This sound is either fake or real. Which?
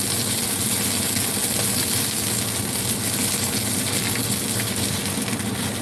real